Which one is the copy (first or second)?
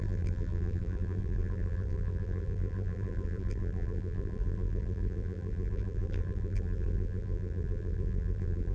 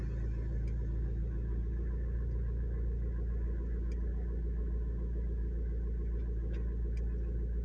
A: first